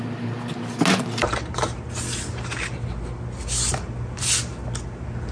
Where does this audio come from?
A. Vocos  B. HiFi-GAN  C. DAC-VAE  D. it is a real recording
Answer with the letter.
D